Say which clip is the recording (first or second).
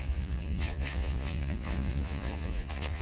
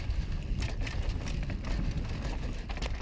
second